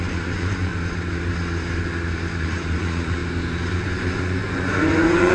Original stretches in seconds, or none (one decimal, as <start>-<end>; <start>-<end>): 0.7-2.4; 3.2-3.7